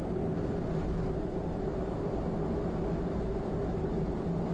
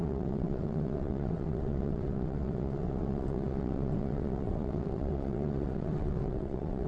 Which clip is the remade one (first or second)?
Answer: second